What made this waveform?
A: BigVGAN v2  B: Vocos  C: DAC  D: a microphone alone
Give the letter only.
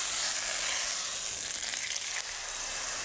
D